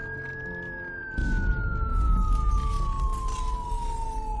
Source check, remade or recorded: recorded